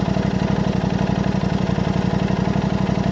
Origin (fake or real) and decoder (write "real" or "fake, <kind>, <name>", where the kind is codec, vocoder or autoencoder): real